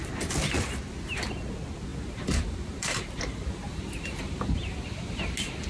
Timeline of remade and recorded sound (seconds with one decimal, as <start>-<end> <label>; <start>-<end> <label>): 0.0-1.9 recorded; 1.9-5.3 remade; 5.3-5.7 recorded